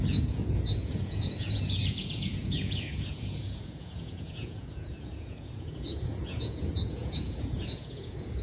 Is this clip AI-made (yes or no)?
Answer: yes